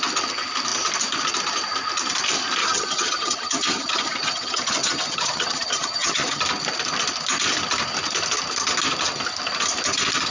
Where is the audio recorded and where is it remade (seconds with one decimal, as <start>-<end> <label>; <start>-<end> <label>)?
0.0-2.6 recorded; 2.6-6.4 remade; 6.4-10.3 recorded